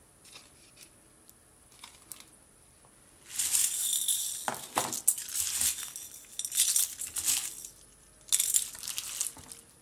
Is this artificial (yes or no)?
no